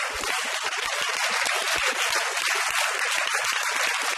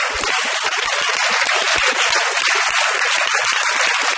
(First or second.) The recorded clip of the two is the first